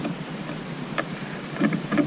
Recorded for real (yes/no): yes